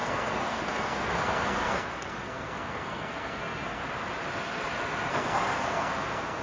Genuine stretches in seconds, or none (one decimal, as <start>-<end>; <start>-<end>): 3.8-5.1